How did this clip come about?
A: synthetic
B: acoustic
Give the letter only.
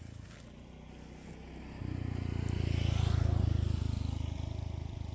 B